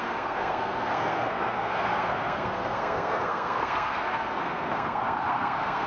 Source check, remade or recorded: remade